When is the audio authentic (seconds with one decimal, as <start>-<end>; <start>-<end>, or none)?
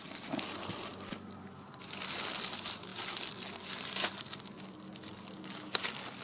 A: 0.0-6.2